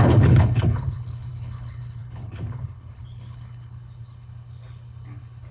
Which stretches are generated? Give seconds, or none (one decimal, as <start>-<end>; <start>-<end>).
0.0-5.5

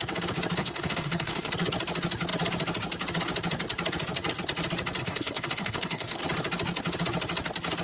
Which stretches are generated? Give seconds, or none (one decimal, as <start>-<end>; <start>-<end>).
0.6-1.5; 5.0-6.2

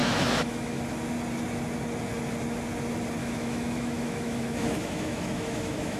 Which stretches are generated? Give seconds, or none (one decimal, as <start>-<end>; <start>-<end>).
0.0-0.8; 3.2-6.0

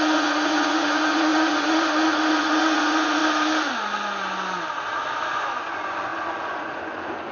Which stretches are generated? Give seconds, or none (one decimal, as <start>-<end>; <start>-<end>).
0.0-3.2; 5.3-7.3

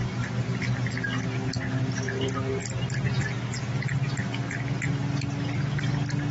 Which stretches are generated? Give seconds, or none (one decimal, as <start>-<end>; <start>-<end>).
none